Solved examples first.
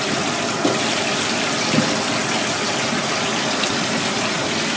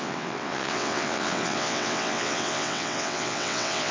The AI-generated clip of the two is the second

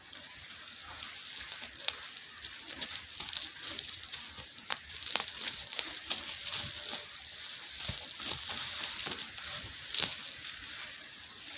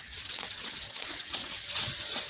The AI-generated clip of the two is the second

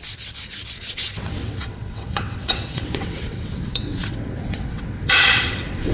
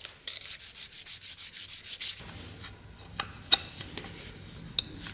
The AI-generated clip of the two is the first